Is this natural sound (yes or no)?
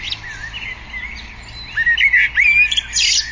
yes